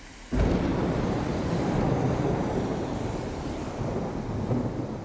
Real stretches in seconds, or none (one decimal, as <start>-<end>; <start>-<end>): 0.0-0.7; 3.7-5.0